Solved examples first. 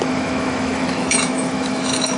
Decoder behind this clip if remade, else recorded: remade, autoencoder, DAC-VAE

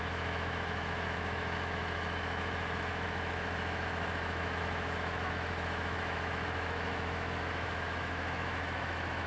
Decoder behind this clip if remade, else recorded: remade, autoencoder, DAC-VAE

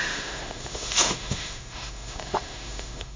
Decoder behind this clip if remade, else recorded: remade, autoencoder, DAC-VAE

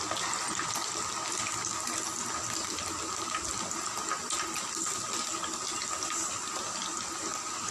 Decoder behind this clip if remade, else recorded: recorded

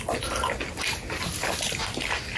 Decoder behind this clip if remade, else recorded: recorded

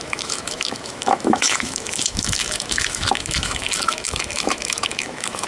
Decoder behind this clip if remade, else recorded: remade, autoencoder, DAC-VAE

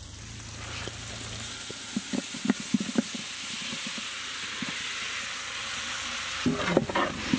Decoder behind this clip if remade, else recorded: recorded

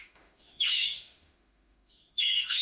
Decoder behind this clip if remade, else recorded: remade, autoencoder, DAC-VAE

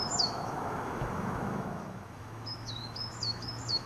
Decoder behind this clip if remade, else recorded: remade, autoencoder, DAC-VAE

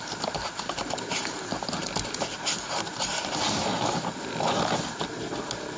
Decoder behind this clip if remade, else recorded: recorded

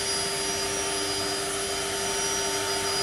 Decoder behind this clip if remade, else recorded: recorded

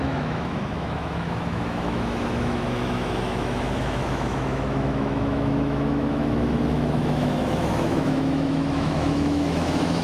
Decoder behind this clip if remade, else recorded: remade, autoencoder, DAC-VAE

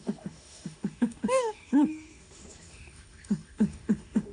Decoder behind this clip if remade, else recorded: remade, autoencoder, DAC-VAE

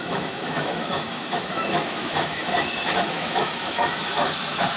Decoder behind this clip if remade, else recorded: remade, autoencoder, DAC-VAE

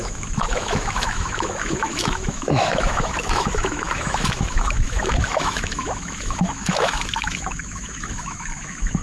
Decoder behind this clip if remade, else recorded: remade, autoencoder, DAC-VAE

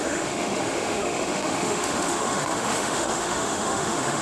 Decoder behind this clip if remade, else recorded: remade, autoencoder, DAC-VAE